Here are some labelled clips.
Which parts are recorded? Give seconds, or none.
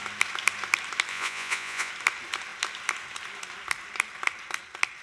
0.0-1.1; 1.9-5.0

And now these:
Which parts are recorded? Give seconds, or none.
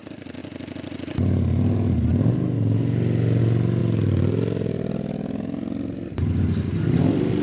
0.0-7.4